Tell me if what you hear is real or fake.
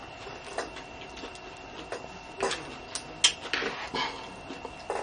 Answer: real